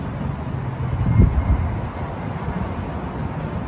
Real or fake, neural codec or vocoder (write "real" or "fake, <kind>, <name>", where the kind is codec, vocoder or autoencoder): real